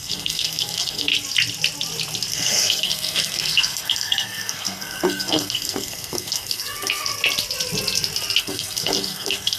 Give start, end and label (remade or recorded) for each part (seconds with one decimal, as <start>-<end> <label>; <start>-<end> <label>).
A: 0.0-1.1 remade; 1.1-2.3 recorded; 2.3-7.1 remade; 7.1-8.4 recorded; 8.4-9.6 remade